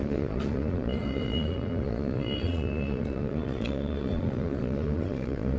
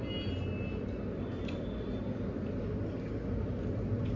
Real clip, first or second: second